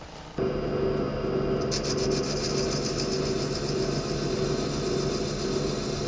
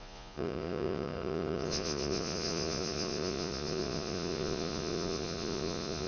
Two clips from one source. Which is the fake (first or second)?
second